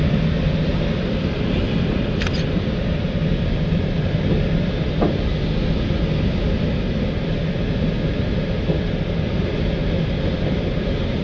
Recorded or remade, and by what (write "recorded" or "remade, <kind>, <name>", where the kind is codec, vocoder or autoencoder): recorded